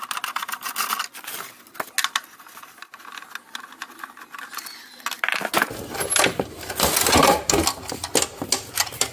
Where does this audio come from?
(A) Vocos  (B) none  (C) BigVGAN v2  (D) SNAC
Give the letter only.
B